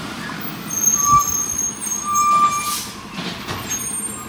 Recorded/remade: recorded